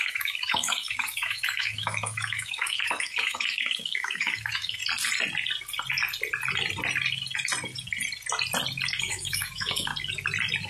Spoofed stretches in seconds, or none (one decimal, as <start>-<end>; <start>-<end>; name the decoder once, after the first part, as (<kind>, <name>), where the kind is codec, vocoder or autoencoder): 0.0-4.8 (autoencoder, DAC-VAE); 9.0-9.9